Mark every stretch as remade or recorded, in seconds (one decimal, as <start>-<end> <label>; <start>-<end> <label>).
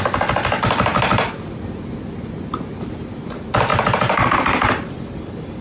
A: 0.0-0.9 recorded; 0.9-1.5 remade; 1.5-3.7 recorded; 3.7-4.9 remade; 4.9-5.6 recorded